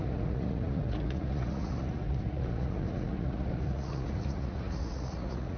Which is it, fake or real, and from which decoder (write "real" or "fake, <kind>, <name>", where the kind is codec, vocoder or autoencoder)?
fake, vocoder, Vocos